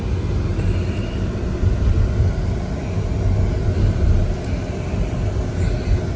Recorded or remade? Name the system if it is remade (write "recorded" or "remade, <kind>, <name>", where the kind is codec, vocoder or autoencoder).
recorded